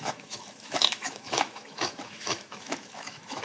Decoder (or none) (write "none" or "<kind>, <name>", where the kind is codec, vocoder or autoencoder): autoencoder, DAC-VAE